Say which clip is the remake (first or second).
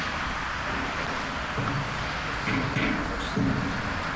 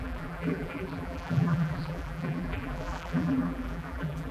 second